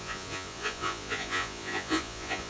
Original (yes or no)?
no